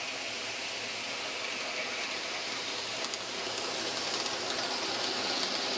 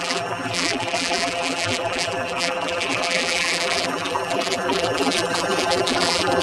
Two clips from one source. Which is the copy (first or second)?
second